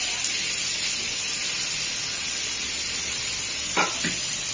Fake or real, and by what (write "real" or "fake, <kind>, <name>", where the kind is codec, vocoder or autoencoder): fake, vocoder, BigVGAN v2